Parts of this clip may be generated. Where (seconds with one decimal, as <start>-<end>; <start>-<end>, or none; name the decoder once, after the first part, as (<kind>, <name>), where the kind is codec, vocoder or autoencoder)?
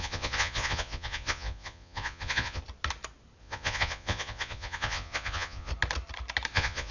0.0-2.6 (vocoder, Vocos); 3.4-5.7; 6.5-6.9